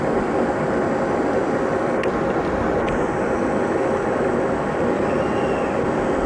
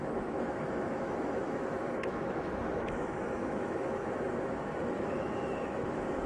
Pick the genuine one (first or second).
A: first